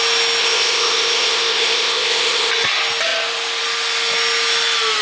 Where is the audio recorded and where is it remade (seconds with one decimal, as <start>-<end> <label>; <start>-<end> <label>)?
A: 0.0-0.4 recorded; 0.4-2.5 remade; 2.5-5.0 recorded